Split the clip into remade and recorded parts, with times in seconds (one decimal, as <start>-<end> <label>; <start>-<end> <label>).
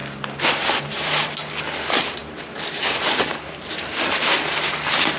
0.0-5.2 recorded